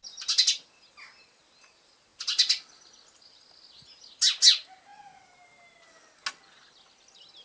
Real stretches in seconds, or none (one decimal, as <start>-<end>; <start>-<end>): 0.0-7.4